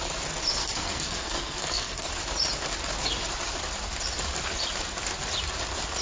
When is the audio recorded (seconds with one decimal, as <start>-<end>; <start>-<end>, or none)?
0.0-0.6; 2.1-6.0

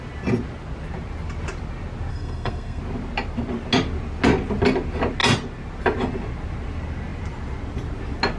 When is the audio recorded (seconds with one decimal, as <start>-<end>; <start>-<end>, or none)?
0.0-2.1; 2.8-8.4

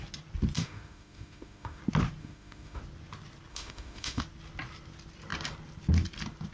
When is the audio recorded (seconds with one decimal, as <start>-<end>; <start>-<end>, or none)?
0.0-0.6; 1.8-2.2; 2.8-3.5; 4.2-6.5

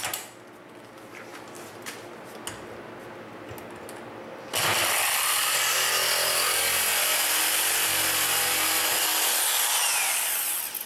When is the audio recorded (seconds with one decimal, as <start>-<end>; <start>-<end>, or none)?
0.0-10.9

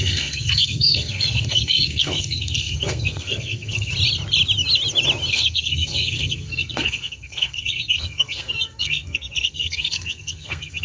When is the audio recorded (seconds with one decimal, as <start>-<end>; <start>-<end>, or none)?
3.9-5.3